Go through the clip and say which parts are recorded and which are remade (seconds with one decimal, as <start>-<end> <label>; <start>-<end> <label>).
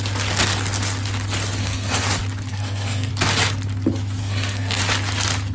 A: 0.0-1.6 recorded; 1.6-2.1 remade; 2.1-2.5 recorded; 2.5-3.1 remade; 3.1-4.2 recorded; 4.2-4.8 remade; 4.8-5.5 recorded